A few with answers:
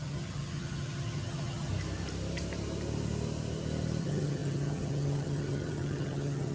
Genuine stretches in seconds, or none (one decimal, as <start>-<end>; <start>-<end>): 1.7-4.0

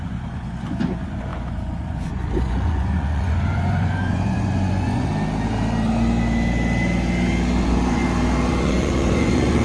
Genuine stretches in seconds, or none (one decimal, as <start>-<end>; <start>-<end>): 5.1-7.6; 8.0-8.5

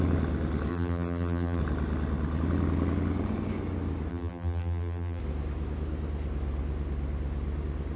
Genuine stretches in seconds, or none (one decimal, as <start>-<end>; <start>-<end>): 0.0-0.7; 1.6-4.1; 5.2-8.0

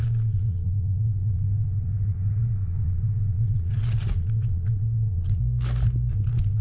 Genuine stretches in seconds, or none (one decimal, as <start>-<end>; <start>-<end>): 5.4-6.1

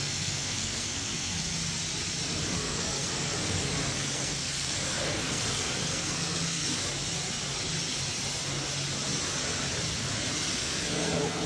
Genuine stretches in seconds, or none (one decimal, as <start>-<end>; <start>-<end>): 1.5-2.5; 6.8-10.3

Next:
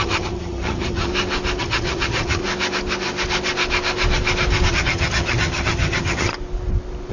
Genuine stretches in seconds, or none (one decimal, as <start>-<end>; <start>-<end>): 1.1-1.6; 2.4-4.7; 6.3-7.1

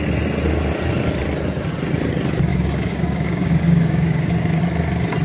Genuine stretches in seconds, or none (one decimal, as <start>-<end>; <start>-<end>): 0.0-2.5; 4.6-5.2

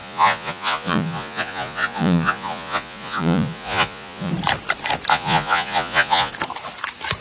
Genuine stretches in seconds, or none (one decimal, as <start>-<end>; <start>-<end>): 4.3-5.1; 6.3-7.2